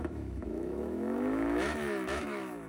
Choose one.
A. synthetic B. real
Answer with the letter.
A